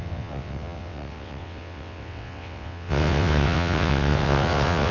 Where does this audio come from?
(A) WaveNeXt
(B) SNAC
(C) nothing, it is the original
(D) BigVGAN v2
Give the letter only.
A